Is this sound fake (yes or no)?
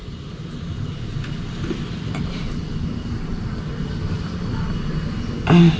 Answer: no